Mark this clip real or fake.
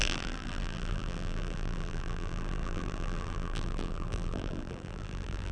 fake